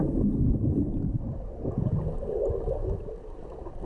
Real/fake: real